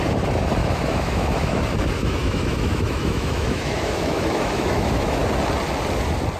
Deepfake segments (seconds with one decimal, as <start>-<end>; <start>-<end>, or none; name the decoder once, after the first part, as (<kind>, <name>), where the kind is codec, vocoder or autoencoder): 0.6-1.6 (autoencoder, DAC-VAE); 2.0-5.2